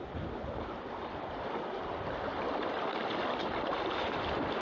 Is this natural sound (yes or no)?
yes